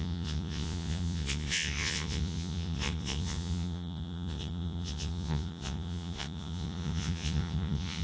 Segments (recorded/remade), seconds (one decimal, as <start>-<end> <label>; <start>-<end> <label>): 0.0-8.0 remade